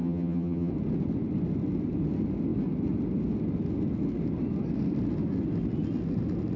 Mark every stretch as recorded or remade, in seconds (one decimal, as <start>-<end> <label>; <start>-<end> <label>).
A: 0.0-0.7 remade; 0.7-6.6 recorded